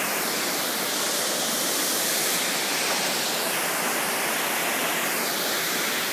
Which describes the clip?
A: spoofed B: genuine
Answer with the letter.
B